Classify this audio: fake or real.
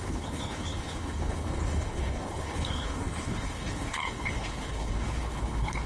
fake